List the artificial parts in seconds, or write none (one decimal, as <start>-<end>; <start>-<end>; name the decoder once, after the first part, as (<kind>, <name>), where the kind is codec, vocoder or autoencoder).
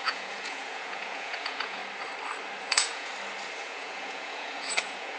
0.0-1.8 (vocoder, Vocos); 2.6-3.1; 3.6-5.2